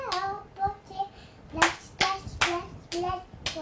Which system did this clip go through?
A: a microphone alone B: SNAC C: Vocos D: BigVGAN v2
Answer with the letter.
A